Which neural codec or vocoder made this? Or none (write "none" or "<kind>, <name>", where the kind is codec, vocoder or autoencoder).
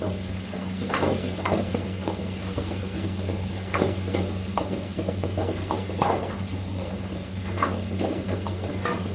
codec, SNAC